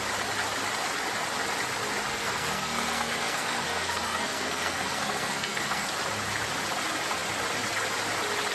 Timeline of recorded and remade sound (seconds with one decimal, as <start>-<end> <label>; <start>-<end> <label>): 0.0-2.1 recorded; 2.1-5.9 remade; 5.9-8.5 recorded